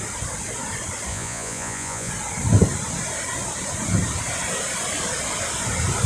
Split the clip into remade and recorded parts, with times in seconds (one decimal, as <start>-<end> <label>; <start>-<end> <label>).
0.0-1.1 recorded; 1.1-2.1 remade; 2.1-6.1 recorded